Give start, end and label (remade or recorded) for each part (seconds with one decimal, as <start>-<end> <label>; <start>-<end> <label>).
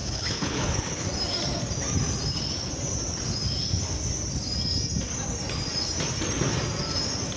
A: 0.0-0.9 remade; 0.9-7.4 recorded